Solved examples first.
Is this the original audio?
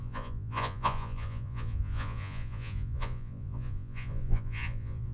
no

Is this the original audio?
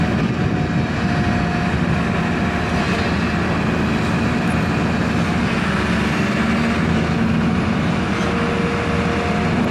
yes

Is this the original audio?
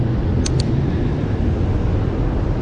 yes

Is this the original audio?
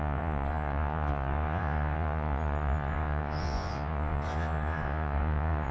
no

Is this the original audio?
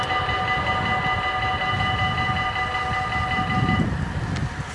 yes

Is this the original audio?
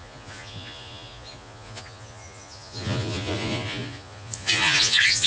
no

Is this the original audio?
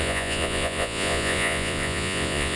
no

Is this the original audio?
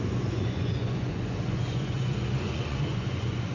no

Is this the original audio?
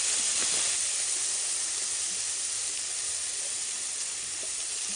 yes